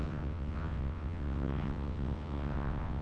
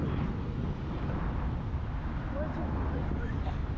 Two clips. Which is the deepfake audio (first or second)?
first